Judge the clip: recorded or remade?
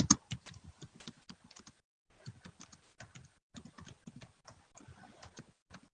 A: recorded